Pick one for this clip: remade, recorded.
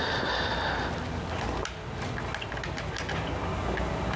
recorded